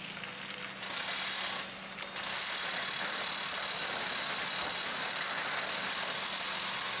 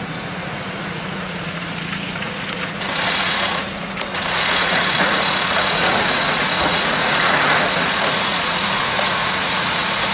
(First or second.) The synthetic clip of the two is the second